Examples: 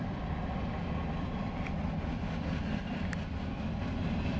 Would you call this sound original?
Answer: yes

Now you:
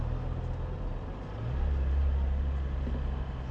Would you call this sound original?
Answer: yes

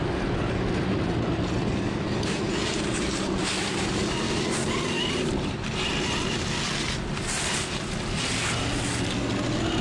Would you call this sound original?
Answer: yes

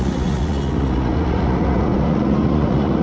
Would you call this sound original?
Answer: no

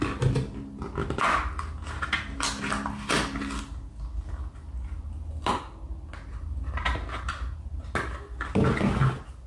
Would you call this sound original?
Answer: yes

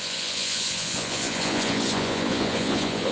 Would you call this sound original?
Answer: no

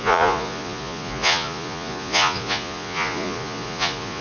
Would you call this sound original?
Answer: no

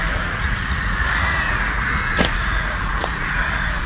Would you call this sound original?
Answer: no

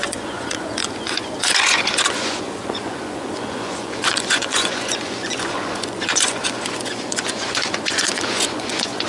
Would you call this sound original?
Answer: no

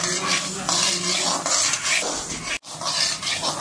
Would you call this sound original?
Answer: yes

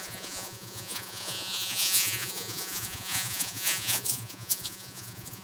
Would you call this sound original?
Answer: no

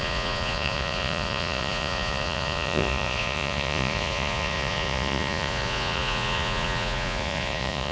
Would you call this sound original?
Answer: no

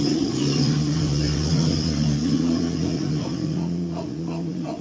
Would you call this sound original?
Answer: no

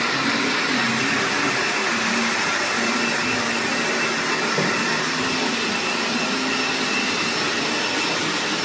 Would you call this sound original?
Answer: yes